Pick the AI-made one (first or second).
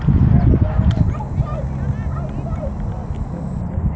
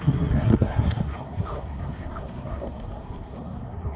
second